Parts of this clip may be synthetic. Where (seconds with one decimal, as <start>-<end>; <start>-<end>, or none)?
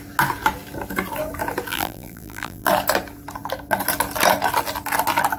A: 1.7-2.7